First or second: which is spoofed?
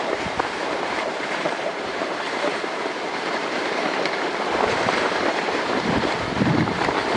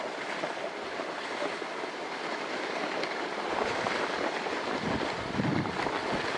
first